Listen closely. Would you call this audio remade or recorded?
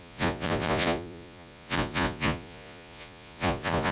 remade